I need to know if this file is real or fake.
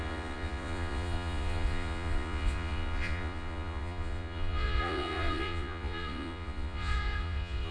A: fake